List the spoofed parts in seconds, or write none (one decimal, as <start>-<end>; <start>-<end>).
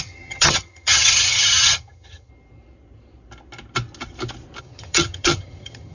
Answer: 0.0-2.3; 4.6-5.9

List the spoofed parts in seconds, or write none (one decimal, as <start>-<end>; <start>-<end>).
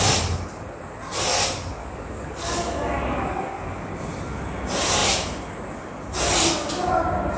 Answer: 1.8-3.9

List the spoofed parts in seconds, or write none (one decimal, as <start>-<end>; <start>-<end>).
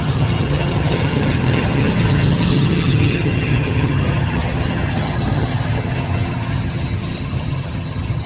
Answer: 0.0-8.3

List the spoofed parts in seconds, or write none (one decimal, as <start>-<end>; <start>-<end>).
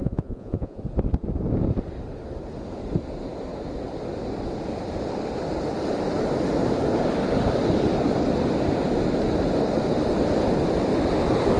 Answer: 0.0-0.8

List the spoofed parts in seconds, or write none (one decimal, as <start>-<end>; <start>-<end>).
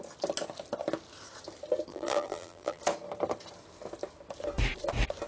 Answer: 1.9-2.8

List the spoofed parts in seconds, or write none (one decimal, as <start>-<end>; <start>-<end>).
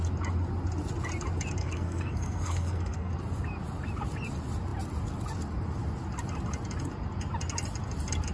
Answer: 1.6-3.1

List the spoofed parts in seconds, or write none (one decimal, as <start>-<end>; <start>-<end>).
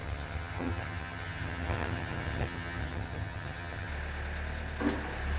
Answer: 0.0-3.9